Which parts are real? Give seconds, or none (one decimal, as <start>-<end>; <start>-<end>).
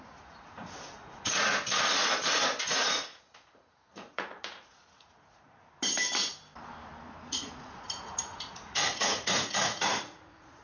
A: 1.5-2.6; 5.7-7.3